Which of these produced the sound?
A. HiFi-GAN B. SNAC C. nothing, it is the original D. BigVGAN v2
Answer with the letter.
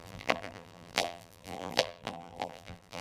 D